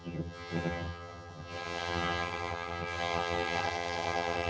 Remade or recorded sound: remade